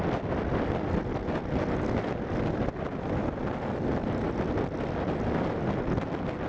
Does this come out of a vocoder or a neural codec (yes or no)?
no